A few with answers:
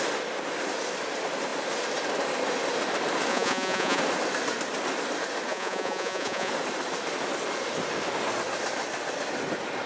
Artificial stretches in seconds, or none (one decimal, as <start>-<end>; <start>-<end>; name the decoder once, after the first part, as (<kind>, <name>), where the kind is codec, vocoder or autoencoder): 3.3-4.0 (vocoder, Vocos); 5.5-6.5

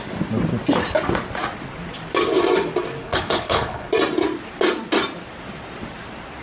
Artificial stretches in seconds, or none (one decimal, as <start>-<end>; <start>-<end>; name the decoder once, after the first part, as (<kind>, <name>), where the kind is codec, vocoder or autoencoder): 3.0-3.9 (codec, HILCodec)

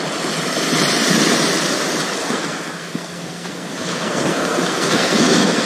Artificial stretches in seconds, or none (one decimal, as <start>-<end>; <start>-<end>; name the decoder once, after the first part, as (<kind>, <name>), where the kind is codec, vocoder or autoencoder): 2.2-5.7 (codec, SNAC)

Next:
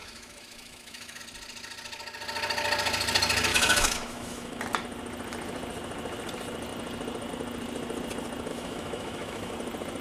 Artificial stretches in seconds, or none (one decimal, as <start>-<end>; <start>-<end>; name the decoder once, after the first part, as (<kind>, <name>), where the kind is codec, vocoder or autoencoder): 0.0-1.2 (autoencoder, DAC-VAE); 3.5-4.6; 8.5-9.5